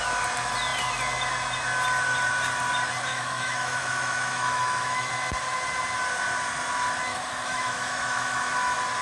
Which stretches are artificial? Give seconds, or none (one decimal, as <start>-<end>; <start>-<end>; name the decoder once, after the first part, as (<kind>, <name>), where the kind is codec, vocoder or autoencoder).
3.1-5.1 (autoencoder, DAC-VAE); 7.1-8.5